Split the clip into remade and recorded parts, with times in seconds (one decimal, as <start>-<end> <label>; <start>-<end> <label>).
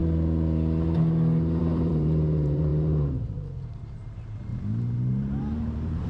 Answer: 0.0-1.6 recorded; 1.6-4.5 remade; 4.5-5.0 recorded; 5.0-6.1 remade